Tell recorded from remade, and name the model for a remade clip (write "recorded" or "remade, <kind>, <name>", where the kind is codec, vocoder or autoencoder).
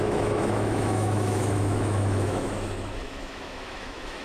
remade, autoencoder, DAC-VAE